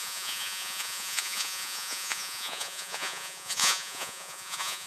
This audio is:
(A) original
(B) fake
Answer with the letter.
B